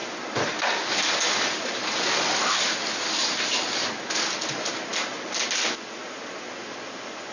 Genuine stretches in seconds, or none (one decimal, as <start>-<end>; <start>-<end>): 0.0-7.3